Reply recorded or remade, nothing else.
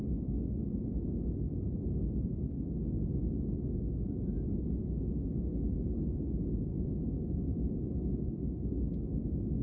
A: recorded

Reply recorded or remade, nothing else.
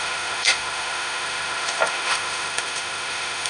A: remade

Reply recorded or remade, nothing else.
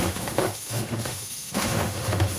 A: remade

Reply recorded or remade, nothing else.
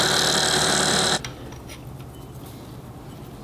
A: recorded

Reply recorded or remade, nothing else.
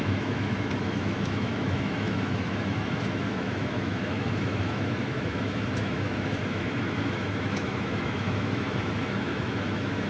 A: remade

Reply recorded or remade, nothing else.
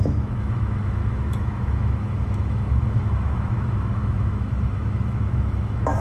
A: remade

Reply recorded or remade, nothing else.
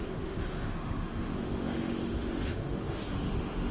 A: remade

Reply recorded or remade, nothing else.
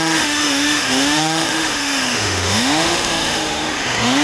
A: remade